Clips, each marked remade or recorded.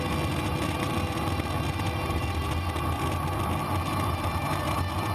recorded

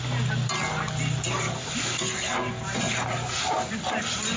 recorded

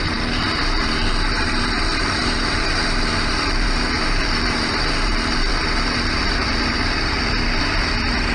remade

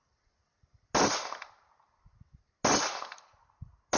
recorded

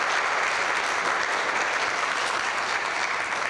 recorded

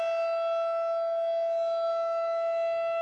recorded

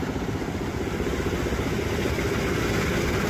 recorded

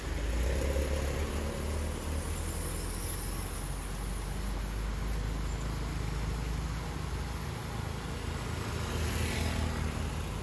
recorded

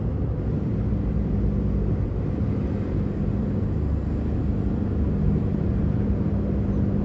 recorded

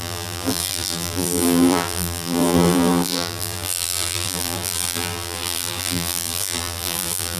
remade